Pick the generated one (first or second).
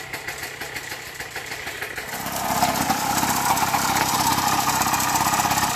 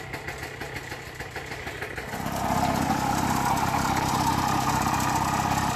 first